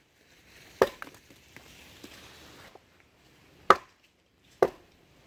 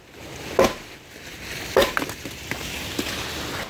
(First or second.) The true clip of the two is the second